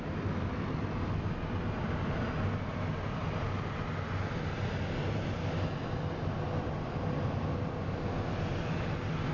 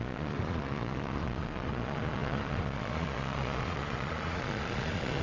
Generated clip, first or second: second